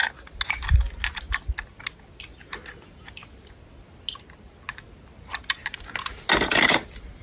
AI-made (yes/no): no